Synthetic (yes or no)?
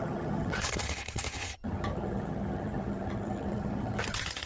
yes